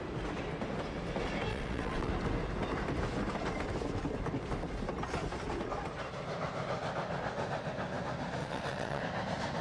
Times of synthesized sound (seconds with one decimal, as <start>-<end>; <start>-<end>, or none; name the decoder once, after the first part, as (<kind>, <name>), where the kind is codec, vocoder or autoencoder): 1.5-2.1 (vocoder, WaveNeXt); 8.4-9.0

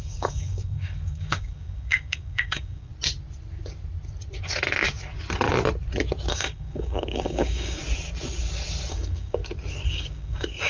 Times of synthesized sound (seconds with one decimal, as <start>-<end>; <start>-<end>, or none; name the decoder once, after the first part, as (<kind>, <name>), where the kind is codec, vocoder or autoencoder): 0.0-2.9 (codec, DAC); 6.3-7.8; 8.9-9.4; 9.9-10.7

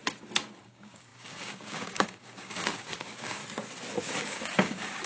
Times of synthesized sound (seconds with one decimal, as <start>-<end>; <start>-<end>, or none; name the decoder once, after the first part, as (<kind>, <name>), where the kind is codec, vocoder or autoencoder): 0.6-3.4 (codec, DAC); 4.2-5.1

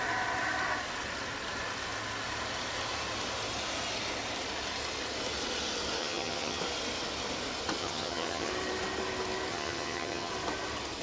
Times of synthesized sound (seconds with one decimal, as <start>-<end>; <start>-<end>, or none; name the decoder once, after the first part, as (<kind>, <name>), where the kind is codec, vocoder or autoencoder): 6.0-6.6 (vocoder, HiFi-GAN); 7.8-8.5; 9.5-10.3

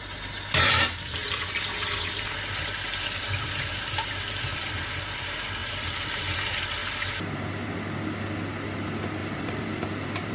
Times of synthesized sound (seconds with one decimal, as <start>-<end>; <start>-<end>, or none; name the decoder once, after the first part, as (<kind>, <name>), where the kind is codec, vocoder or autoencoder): 5.6-6.2 (vocoder, BigVGAN v2); 9.2-10.3

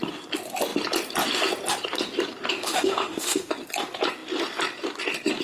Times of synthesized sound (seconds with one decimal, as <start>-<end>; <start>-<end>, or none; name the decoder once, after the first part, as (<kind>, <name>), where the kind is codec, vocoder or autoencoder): 2.5-3.5 (autoencoder, DAC-VAE)

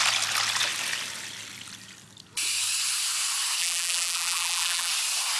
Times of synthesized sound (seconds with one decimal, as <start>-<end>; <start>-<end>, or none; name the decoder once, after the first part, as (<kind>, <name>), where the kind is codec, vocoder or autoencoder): 3.6-4.9 (vocoder, BigVGAN v2)

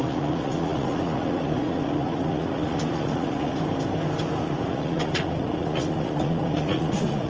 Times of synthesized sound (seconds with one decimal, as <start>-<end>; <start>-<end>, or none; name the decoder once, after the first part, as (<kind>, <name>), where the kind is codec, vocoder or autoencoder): 0.0-3.5 (vocoder, Vocos); 4.4-7.3